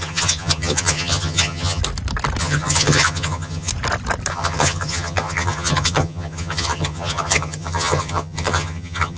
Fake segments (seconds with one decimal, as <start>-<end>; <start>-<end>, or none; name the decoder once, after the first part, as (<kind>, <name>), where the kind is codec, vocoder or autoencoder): 0.0-1.8 (vocoder, HiFi-GAN); 2.4-3.7; 4.3-9.2